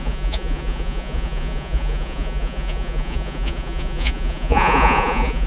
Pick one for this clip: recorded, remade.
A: remade